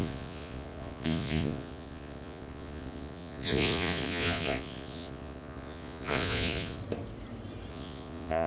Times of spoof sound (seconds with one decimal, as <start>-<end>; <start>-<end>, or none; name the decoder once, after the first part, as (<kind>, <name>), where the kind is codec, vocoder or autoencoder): 0.0-6.8 (vocoder, Vocos); 7.7-8.5